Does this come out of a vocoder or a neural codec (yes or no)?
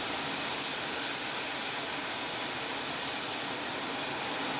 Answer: no